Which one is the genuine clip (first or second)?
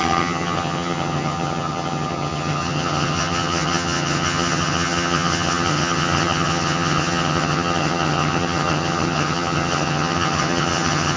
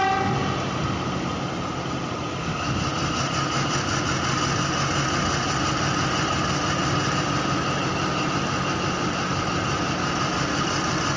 second